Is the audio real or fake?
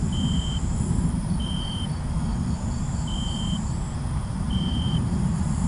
fake